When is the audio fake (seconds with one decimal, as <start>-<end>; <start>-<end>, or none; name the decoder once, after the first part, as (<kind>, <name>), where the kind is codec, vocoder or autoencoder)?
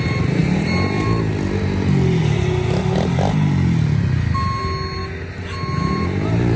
none